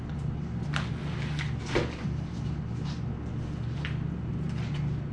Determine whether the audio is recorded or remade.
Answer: recorded